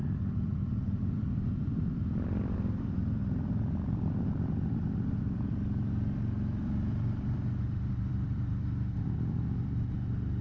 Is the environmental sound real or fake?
fake